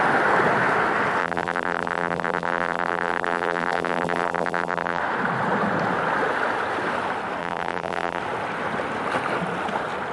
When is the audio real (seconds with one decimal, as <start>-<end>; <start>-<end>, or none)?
0.0-1.2; 5.0-7.4; 8.2-10.1